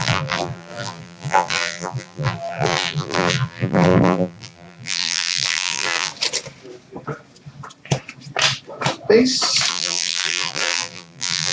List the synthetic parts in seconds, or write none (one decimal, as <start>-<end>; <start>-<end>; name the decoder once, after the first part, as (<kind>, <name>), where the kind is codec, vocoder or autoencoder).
0.0-6.1 (vocoder, BigVGAN v2); 9.7-11.5